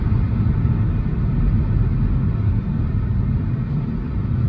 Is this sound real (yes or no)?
yes